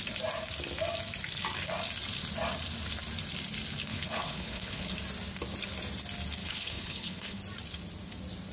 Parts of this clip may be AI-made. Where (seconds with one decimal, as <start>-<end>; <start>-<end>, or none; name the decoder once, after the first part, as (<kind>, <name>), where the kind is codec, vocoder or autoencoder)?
3.9-4.8 (codec, HILCodec); 6.4-7.4